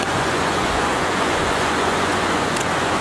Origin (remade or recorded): remade